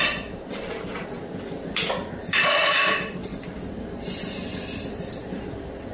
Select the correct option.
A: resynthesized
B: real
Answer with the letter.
B